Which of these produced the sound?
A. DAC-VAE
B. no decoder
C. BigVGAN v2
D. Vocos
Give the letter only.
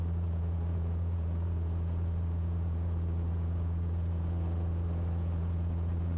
D